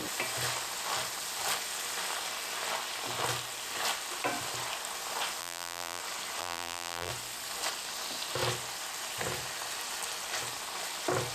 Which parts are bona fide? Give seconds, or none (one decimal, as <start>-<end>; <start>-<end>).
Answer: 0.0-5.4; 6.0-6.4; 7.1-11.3